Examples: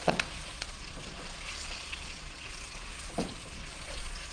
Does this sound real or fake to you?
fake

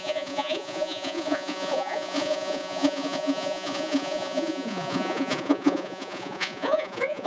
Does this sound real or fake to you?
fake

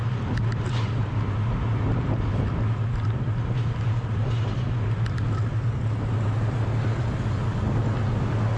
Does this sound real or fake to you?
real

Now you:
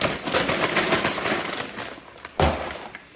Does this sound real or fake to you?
real